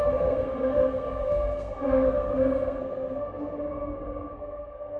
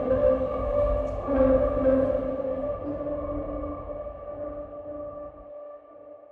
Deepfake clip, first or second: first